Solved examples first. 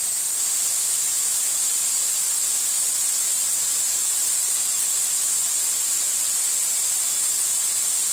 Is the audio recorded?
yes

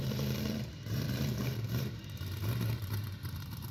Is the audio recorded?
no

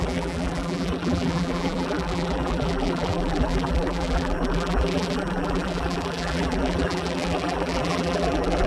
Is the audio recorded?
no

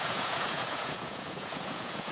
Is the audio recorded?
no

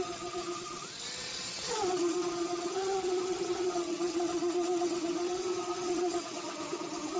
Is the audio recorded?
no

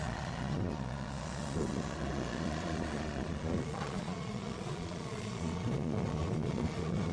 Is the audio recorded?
no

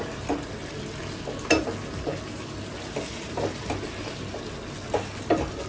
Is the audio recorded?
yes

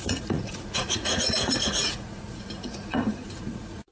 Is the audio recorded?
no